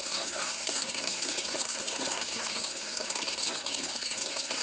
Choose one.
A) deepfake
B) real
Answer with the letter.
A